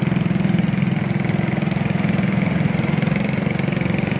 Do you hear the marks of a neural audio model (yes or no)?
no